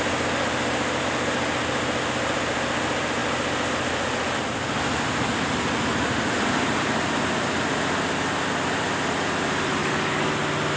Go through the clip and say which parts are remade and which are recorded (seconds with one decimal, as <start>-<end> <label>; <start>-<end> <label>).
0.0-9.8 recorded; 9.8-10.3 remade; 10.3-10.8 recorded